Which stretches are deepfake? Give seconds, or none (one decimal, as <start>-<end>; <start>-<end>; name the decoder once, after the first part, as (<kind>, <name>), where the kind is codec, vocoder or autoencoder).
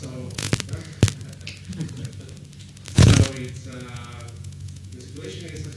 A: 0.0-0.5 (vocoder, Vocos); 2.9-5.8